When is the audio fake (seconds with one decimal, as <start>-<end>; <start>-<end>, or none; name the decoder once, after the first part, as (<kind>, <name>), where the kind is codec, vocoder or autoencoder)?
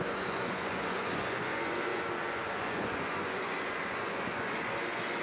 0.0-5.2 (vocoder, Vocos)